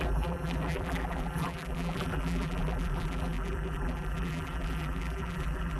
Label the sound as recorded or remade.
remade